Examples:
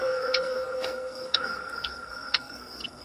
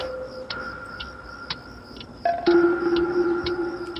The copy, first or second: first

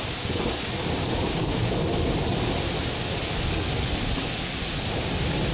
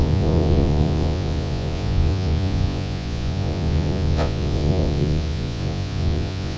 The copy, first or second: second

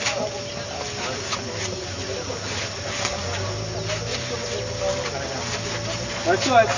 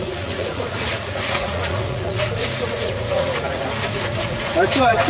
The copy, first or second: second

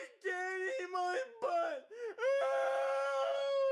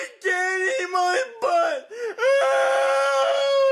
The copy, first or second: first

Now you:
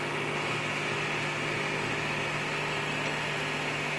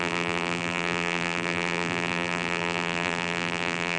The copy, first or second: second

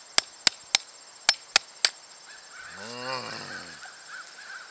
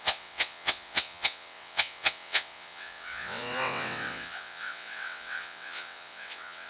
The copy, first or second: second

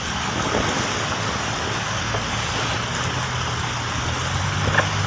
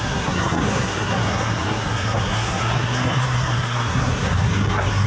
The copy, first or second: second